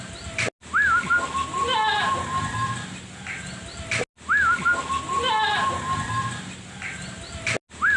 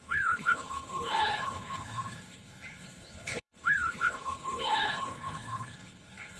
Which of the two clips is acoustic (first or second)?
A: first